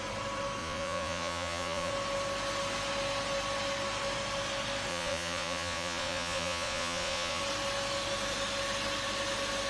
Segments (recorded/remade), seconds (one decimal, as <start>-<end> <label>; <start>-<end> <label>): 0.0-0.6 recorded; 0.6-1.9 remade; 1.9-4.9 recorded; 4.9-7.4 remade; 7.4-9.7 recorded